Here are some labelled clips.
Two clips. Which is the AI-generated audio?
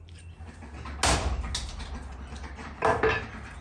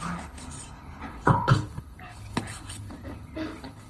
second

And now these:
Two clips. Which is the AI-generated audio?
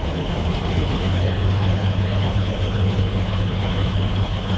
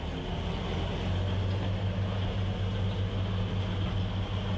first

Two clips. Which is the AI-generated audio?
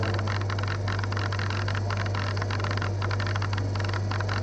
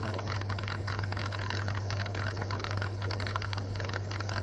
second